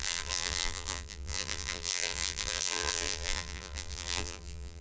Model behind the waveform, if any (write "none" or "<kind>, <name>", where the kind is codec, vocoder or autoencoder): vocoder, BigVGAN v2